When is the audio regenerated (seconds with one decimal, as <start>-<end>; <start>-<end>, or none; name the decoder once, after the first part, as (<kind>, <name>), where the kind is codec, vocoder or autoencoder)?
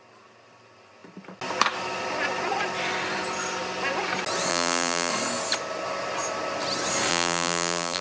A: 4.5-5.1 (vocoder, BigVGAN v2); 7.1-8.0